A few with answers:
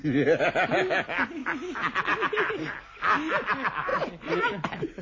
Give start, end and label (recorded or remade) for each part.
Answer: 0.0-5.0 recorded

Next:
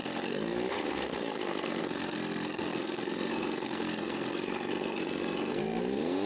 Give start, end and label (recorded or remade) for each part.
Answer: 0.0-6.3 remade

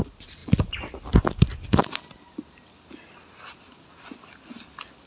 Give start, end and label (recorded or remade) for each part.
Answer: 0.0-5.1 recorded

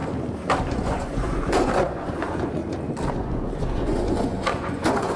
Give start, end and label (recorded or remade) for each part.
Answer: 0.0-0.7 recorded; 0.7-2.6 remade; 2.6-3.1 recorded; 3.1-5.2 remade

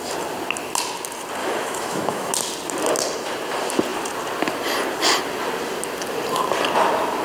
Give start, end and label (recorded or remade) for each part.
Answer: 0.0-1.4 recorded; 1.4-2.3 remade; 2.3-7.2 recorded

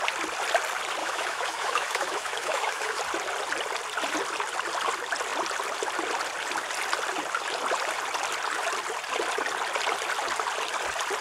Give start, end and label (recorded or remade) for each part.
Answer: 0.0-1.0 recorded; 1.0-3.0 remade; 3.0-11.2 recorded

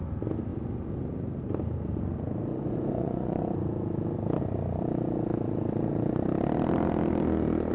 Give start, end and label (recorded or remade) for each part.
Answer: 0.0-2.5 recorded; 2.5-3.4 remade; 3.4-7.7 recorded